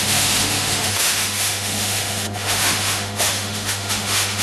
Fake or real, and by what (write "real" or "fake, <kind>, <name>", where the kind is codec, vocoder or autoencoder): fake, autoencoder, DAC-VAE